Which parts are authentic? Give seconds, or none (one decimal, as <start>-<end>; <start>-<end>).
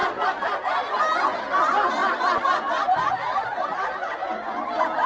0.0-5.1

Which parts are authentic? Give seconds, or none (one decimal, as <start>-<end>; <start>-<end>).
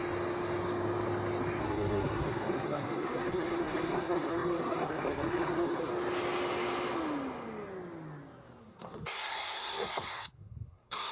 0.0-1.6; 5.9-8.6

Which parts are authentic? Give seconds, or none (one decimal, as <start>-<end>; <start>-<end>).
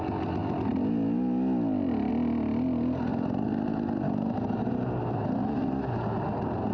0.0-6.7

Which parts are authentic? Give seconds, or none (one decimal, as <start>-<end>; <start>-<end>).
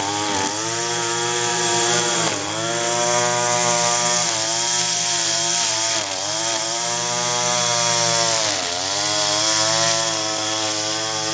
0.0-1.5; 2.5-11.3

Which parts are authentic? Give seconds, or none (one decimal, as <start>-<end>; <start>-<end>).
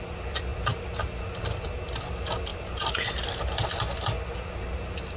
0.0-5.2